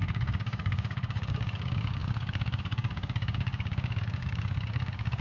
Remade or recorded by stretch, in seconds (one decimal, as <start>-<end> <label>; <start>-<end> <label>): 0.0-5.2 remade